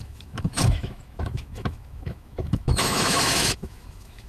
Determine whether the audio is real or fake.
fake